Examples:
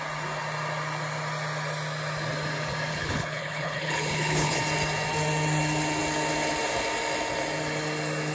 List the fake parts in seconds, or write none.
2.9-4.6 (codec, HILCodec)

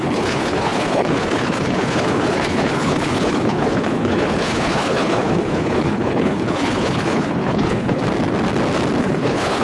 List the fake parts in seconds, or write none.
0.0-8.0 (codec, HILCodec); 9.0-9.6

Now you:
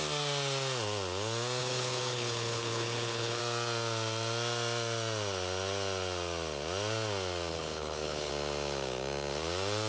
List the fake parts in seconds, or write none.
1.6-3.4 (codec, HILCodec); 7.5-8.3

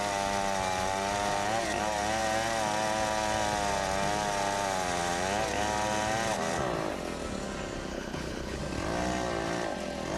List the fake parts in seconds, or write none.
7.9-8.6 (codec, HILCodec)

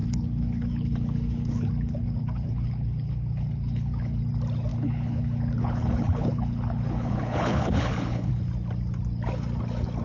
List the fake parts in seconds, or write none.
0.0-4.2 (codec, HILCodec); 4.7-8.3